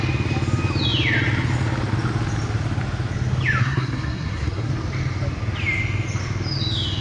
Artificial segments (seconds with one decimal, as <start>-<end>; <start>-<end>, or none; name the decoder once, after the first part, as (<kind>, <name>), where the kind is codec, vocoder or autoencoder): 3.6-4.7 (codec, SNAC)